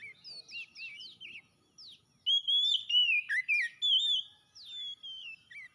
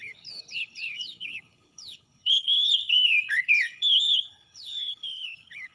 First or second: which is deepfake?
second